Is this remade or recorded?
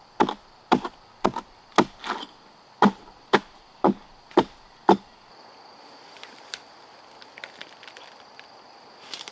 recorded